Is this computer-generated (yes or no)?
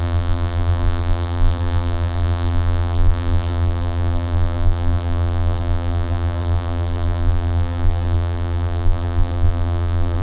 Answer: yes